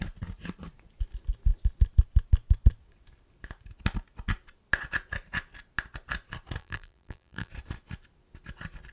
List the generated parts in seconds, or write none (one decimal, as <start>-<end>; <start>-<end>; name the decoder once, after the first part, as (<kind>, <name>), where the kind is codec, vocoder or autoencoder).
6.6-7.5 (vocoder, BigVGAN v2)